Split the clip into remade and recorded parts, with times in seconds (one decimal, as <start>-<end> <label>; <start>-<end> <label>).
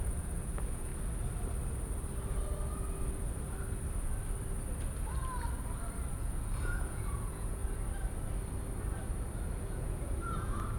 0.0-0.9 remade; 0.9-6.1 recorded; 6.1-7.6 remade; 7.6-9.6 recorded; 9.6-10.8 remade